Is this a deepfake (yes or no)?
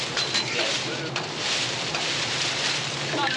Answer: yes